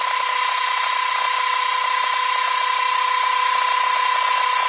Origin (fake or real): real